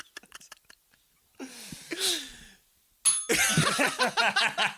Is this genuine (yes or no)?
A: yes